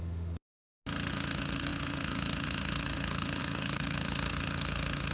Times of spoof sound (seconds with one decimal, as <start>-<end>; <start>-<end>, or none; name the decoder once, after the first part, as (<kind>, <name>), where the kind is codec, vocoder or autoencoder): 0.0-0.5 (autoencoder, DAC-VAE); 1.1-5.1